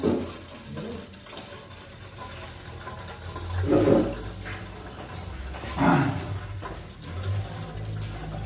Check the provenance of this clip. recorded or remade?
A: recorded